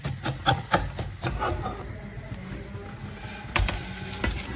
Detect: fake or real real